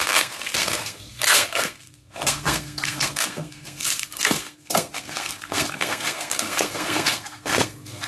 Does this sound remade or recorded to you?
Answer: remade